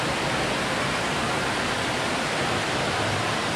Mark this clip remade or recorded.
recorded